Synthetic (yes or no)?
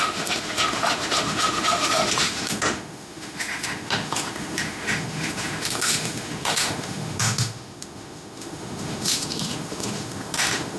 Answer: yes